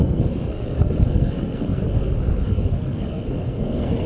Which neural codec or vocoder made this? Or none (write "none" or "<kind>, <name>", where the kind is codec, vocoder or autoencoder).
codec, SNAC